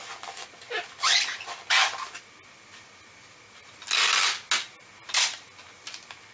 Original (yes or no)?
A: yes